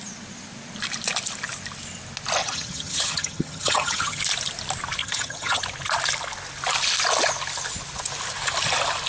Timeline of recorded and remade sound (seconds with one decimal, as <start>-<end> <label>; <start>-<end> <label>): 0.0-2.4 recorded; 2.4-4.2 remade; 4.2-5.0 recorded; 5.0-5.6 remade; 5.6-9.1 recorded